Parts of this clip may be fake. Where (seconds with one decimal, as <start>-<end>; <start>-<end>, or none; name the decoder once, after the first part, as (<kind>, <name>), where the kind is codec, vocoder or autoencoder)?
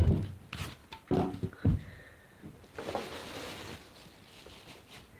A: 0.8-1.5 (vocoder, BigVGAN v2)